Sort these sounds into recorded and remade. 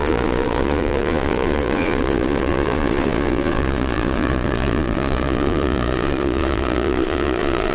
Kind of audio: remade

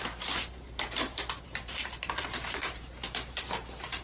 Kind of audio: remade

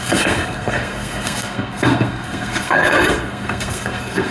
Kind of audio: remade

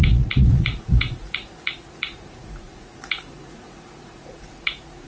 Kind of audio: remade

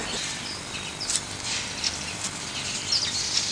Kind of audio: recorded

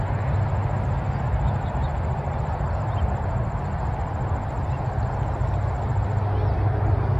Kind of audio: recorded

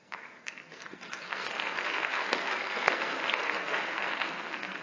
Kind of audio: remade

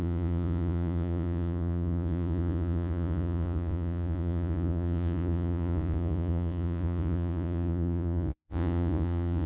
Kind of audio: remade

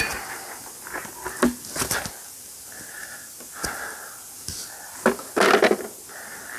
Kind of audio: recorded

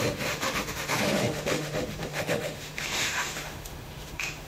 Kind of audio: remade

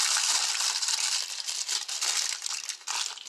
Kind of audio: remade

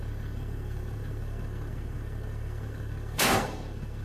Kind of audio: remade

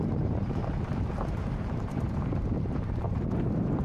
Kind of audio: remade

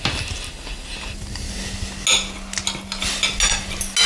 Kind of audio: recorded